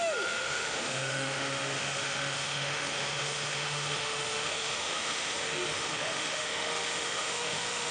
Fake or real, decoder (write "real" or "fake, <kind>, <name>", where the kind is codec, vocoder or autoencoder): fake, autoencoder, DAC-VAE